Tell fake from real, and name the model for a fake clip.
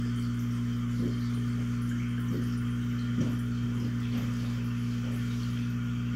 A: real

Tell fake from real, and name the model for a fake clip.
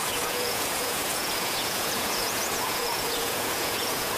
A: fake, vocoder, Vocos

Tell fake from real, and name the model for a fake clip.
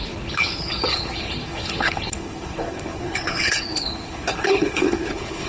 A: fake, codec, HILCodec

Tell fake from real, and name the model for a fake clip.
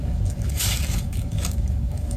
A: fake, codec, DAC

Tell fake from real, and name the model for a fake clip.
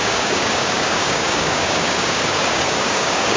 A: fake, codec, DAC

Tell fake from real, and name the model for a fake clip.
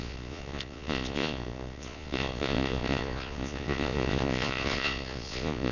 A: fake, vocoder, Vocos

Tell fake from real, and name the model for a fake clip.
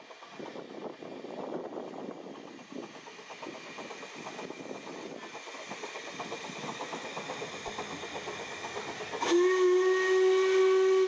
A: real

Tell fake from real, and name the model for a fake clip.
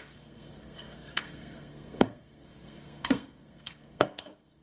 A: fake, codec, SNAC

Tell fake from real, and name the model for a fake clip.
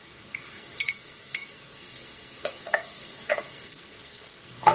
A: fake, codec, SNAC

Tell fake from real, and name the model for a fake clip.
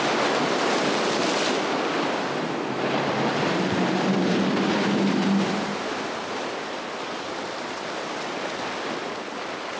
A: real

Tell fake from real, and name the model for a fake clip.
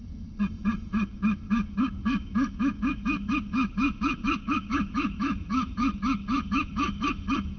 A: fake, autoencoder, DAC-VAE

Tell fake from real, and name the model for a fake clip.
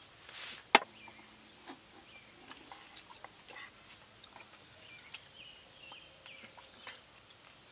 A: real